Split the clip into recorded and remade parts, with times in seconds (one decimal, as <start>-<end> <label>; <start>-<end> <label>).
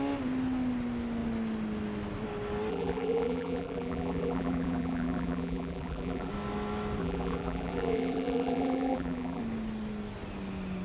0.0-2.7 recorded; 2.7-6.3 remade; 6.3-7.0 recorded; 7.0-9.4 remade; 9.4-10.8 recorded